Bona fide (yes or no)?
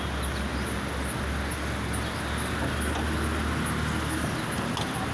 yes